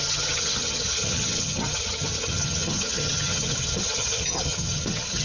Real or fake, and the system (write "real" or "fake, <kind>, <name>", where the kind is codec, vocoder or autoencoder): fake, vocoder, HiFi-GAN